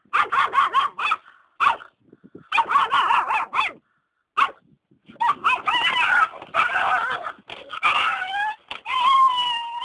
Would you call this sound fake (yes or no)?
no